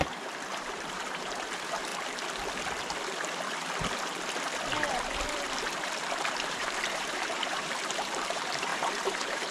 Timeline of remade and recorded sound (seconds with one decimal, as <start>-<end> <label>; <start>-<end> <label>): 0.0-1.9 remade; 1.9-6.5 recorded; 6.5-9.5 remade